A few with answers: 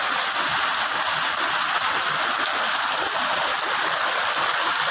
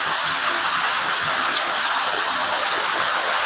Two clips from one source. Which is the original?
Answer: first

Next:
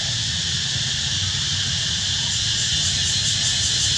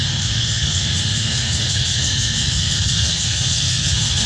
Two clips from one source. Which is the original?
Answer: first